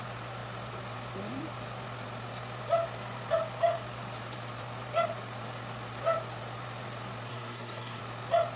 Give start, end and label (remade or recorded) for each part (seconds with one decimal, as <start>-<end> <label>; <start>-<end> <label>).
0.0-7.3 recorded; 7.3-8.0 remade; 8.0-8.6 recorded